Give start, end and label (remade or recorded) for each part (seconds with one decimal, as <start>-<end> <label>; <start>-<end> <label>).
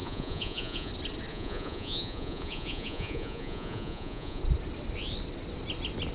0.0-0.9 remade; 0.9-1.3 recorded; 1.3-4.4 remade; 4.4-6.1 recorded